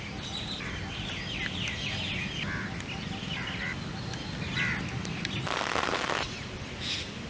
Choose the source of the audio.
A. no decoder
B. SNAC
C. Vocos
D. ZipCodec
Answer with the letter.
A